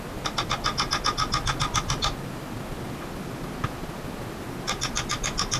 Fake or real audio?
real